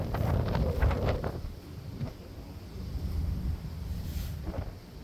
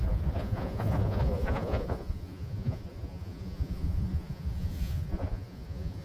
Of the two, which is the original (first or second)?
first